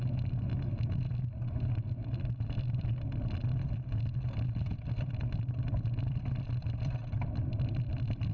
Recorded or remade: recorded